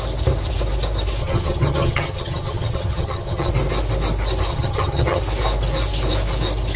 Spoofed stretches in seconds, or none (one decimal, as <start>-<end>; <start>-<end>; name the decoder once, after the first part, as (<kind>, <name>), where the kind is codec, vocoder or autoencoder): 1.2-3.5 (vocoder, HiFi-GAN); 4.5-5.2